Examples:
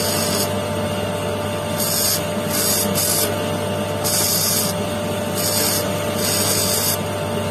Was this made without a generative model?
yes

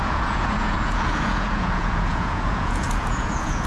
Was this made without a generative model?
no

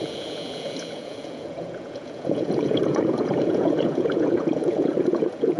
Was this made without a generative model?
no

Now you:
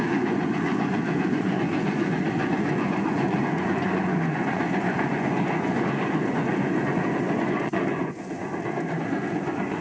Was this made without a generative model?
no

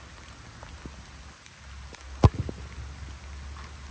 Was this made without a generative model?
yes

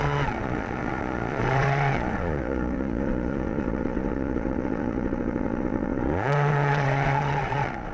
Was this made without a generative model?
no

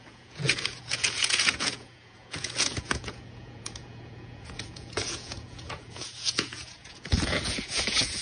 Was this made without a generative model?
no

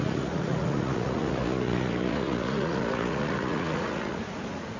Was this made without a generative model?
no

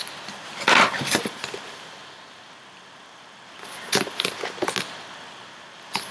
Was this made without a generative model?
yes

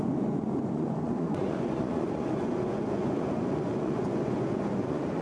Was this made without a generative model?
no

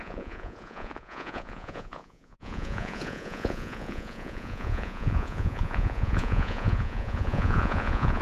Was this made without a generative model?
no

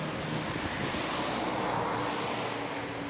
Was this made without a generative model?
yes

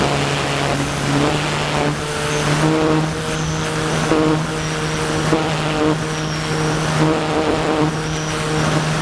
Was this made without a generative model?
yes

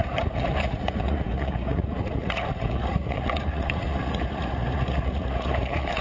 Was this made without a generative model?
no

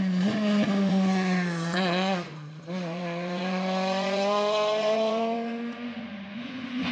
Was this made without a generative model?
no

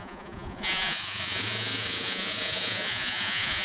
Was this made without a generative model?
no